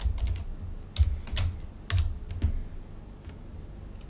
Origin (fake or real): real